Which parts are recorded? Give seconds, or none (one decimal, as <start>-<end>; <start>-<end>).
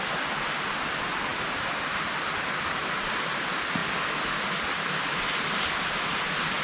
0.0-6.6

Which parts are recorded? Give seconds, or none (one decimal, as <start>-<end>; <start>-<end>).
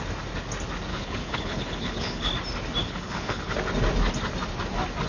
0.0-0.9; 2.3-2.8; 3.5-5.1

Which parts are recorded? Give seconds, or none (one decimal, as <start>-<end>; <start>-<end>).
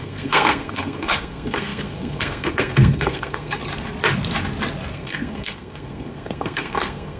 3.6-4.9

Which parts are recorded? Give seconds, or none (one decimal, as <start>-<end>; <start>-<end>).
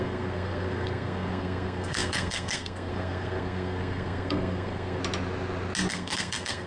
5.0-5.9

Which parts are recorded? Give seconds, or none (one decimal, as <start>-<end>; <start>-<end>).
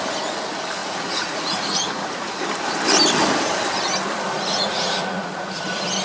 0.0-0.8; 2.4-4.5; 5.6-6.0